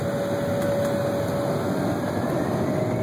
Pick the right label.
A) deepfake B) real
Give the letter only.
B